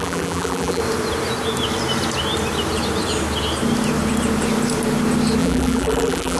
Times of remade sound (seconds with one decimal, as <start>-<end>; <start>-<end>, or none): 0.0-0.8; 5.4-6.4